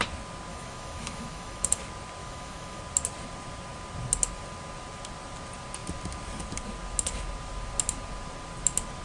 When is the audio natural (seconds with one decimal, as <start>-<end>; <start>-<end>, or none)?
0.0-0.5; 1.8-2.2; 2.8-9.0